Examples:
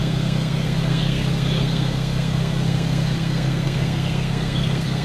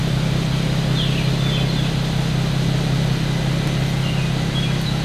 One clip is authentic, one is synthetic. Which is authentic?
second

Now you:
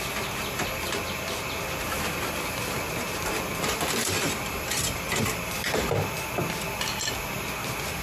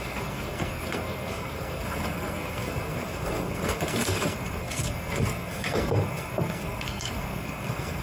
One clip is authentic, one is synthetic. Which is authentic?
first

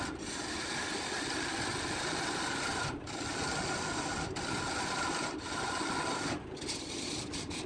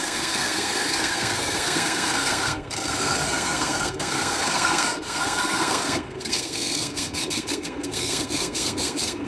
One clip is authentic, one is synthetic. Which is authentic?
first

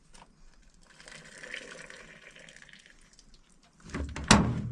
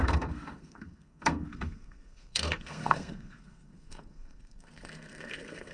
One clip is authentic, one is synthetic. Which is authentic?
first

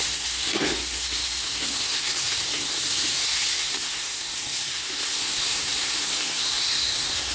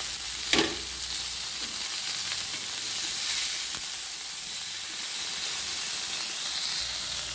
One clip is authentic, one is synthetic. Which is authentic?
second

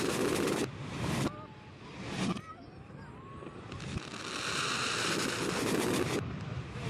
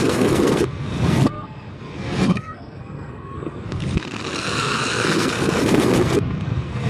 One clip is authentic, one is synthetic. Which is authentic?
first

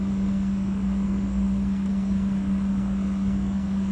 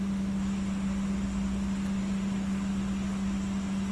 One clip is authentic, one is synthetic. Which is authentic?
second